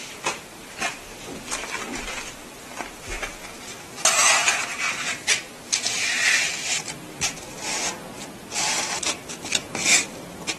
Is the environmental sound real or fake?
real